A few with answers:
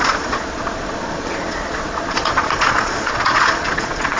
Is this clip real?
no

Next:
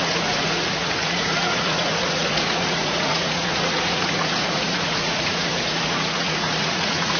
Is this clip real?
no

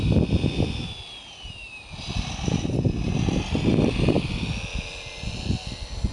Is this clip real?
yes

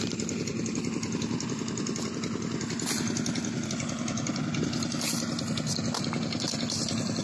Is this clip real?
yes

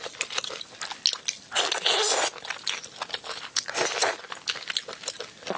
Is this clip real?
yes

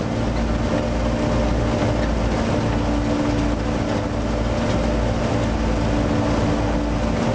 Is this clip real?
yes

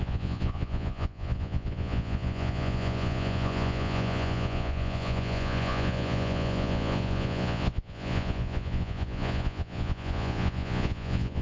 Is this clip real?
no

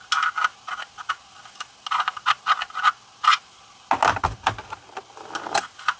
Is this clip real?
yes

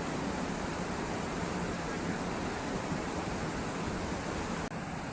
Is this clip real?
yes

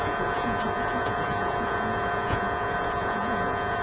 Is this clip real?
no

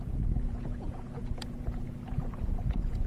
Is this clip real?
no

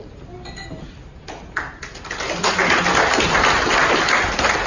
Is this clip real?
yes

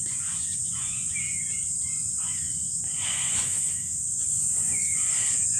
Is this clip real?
no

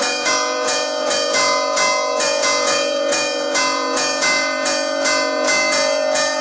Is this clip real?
no